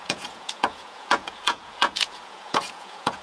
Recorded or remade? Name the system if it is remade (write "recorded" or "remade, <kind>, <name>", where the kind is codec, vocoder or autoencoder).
remade, vocoder, Vocos